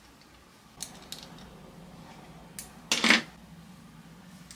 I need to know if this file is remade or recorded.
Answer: recorded